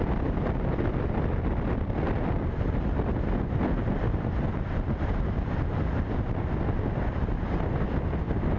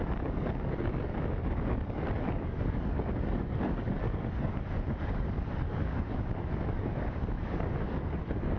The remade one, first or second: second